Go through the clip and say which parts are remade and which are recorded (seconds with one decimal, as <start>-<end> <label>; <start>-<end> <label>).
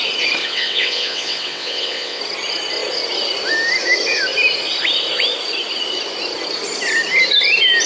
0.0-0.4 recorded; 0.4-2.2 remade; 2.2-7.9 recorded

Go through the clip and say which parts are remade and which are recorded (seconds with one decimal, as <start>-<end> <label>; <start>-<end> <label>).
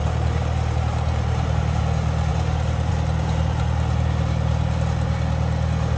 0.0-1.8 remade; 1.8-2.3 recorded; 2.3-2.9 remade; 2.9-6.0 recorded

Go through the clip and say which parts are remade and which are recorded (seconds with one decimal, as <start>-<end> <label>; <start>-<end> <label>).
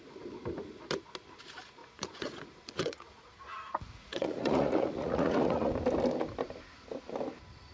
0.0-1.8 recorded; 1.8-5.7 remade; 5.7-7.7 recorded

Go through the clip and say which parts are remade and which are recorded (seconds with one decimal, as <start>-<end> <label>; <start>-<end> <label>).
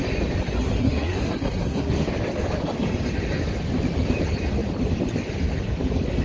0.0-0.8 recorded; 0.8-2.1 remade; 2.1-6.2 recorded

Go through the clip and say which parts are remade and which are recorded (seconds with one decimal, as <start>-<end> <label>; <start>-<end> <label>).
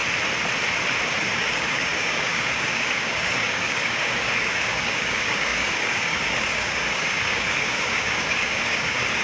0.0-1.3 recorded; 1.3-9.2 remade